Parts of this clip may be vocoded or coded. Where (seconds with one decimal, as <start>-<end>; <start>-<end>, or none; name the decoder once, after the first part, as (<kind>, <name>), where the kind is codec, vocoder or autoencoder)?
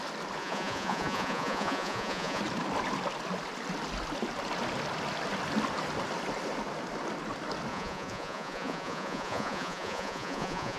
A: 0.4-2.4 (vocoder, Vocos); 7.7-10.8